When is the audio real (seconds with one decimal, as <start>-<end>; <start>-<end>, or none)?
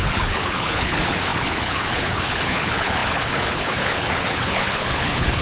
none